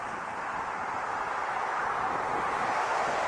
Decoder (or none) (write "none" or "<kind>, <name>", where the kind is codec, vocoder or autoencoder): none